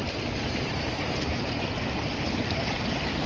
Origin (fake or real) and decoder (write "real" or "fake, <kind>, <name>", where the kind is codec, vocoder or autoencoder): fake, vocoder, BigVGAN v2